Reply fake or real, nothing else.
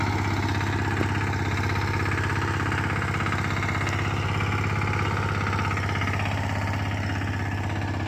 real